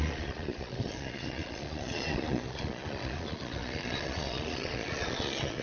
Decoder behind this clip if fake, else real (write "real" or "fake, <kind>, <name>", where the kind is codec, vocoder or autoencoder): fake, vocoder, Vocos